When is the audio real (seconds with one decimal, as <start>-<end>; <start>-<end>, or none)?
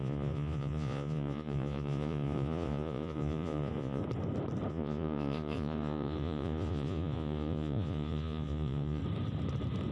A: 4.0-4.7; 9.0-9.9